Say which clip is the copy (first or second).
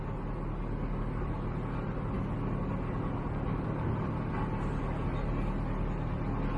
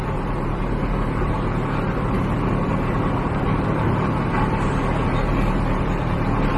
second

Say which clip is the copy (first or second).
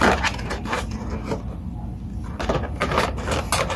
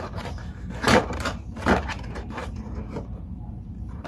second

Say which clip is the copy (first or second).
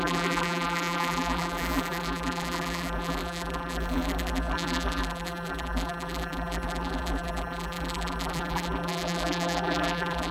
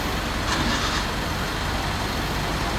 first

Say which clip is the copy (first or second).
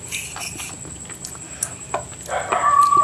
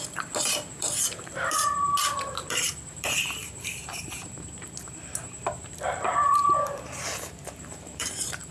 second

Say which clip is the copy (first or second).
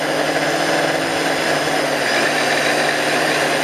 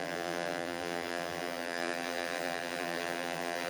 second